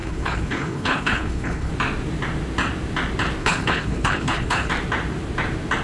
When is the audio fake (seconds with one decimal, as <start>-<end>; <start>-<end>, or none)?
0.0-1.7; 3.4-4.7

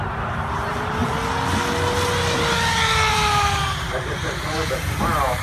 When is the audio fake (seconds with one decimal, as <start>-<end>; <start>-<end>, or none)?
0.0-1.0; 3.1-5.4

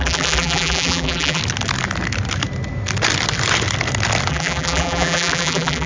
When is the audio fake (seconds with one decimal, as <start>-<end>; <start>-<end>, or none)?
0.0-1.4; 4.3-5.9

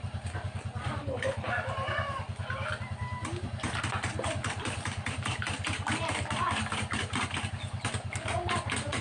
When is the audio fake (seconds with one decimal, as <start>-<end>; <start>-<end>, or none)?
1.0-1.5

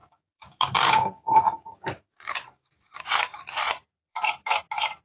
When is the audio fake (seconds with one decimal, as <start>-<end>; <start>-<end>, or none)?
0.0-3.0; 4.1-4.6